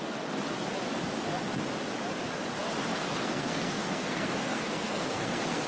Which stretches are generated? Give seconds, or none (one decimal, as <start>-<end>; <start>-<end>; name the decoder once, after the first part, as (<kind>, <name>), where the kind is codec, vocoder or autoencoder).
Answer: 2.9-5.7 (codec, SNAC)